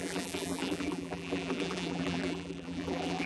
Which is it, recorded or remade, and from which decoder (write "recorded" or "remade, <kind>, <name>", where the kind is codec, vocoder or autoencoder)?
remade, vocoder, BigVGAN v2